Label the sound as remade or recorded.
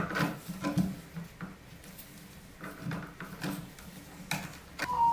recorded